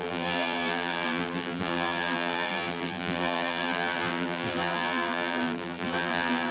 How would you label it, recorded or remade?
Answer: remade